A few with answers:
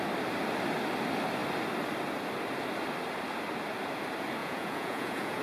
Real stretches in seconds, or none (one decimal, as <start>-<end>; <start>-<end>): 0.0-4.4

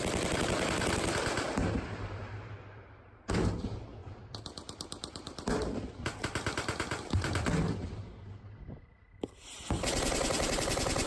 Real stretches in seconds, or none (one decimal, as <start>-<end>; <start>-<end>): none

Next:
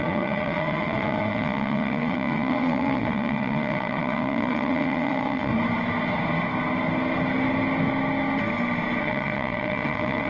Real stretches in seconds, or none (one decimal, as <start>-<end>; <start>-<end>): 5.5-9.0

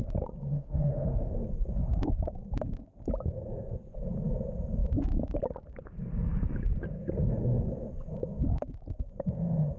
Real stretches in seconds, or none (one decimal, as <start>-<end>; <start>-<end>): 0.0-0.5; 1.3-9.8

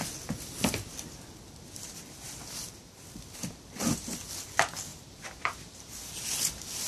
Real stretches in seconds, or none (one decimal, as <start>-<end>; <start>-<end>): 0.0-4.9; 5.9-6.9

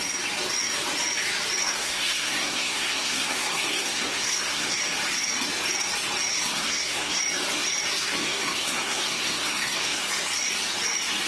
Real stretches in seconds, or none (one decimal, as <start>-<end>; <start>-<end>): 0.0-1.6; 4.8-6.3; 7.2-8.2; 10.0-11.3